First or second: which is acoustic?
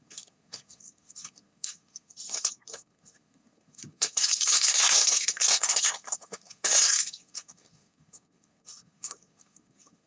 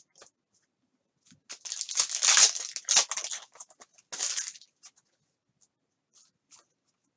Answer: second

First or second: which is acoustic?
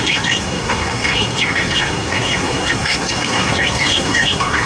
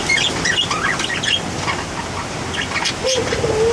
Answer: second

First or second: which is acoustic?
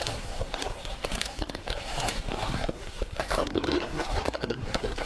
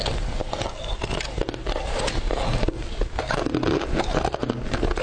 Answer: second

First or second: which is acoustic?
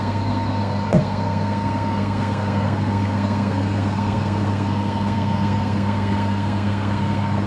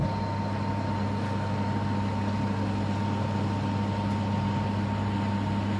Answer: second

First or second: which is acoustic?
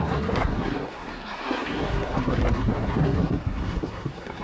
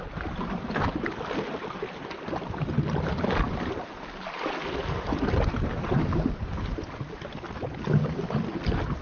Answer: second